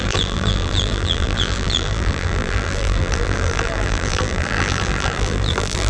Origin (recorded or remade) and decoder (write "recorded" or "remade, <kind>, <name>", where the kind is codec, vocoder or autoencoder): remade, vocoder, BigVGAN v2